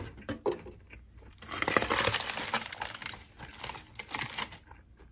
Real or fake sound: real